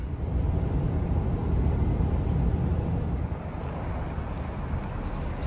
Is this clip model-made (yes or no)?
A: no